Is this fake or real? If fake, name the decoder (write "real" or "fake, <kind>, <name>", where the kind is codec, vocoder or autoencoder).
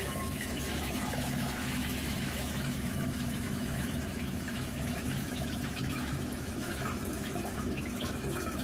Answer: fake, autoencoder, DAC-VAE